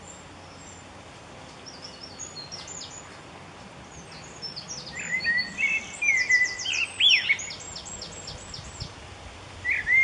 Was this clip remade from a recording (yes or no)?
no